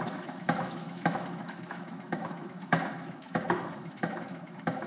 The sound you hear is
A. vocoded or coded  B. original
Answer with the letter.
A